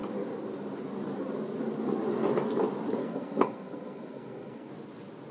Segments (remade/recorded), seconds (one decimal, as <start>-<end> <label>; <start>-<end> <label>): 0.0-3.0 recorded; 3.0-4.7 remade; 4.7-5.3 recorded